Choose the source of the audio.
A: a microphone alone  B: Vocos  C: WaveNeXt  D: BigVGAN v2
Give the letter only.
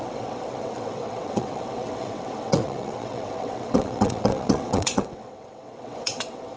C